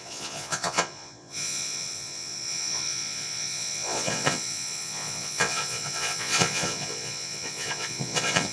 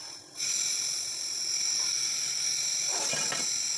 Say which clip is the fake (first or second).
first